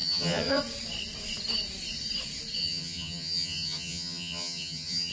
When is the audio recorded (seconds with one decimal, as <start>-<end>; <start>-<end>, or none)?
0.6-2.6